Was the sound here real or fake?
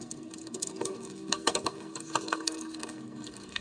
fake